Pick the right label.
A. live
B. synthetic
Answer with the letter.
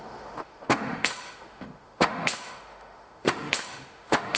B